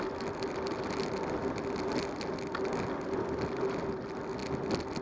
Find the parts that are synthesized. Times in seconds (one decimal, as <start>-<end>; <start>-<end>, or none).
none